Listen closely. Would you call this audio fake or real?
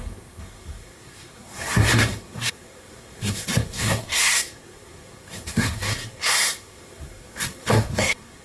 fake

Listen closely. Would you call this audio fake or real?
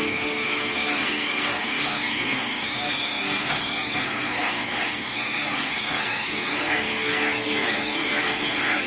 fake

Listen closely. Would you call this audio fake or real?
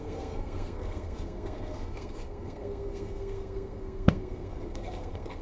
fake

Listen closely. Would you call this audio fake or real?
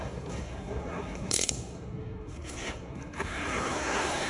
fake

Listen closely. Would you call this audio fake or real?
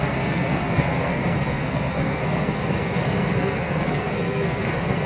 fake